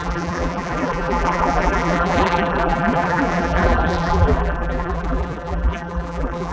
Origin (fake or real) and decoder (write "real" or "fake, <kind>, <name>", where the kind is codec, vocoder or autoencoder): fake, vocoder, BigVGAN v2